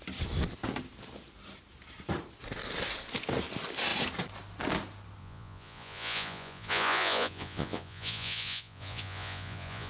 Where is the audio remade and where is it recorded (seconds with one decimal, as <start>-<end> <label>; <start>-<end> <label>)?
0.0-5.2 recorded; 5.2-9.9 remade